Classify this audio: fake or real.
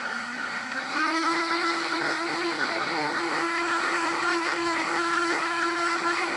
fake